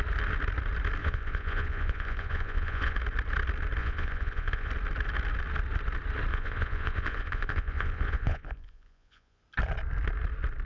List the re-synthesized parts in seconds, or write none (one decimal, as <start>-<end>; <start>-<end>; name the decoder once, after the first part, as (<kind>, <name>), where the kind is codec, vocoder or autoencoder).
1.0-3.0 (vocoder, Vocos); 3.8-4.7; 6.3-9.4